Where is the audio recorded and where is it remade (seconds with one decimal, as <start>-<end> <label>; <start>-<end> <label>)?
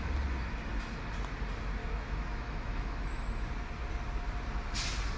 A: 0.0-1.8 recorded; 1.8-3.5 remade; 3.5-5.2 recorded